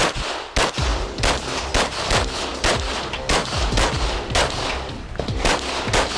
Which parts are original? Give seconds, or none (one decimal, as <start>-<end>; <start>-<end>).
0.0-6.2